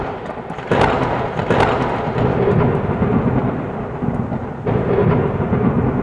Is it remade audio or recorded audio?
recorded